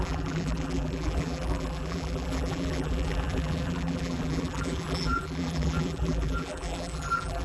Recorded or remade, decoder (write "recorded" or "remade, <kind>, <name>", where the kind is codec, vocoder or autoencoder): remade, vocoder, BigVGAN v2